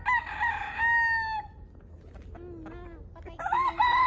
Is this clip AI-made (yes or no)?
no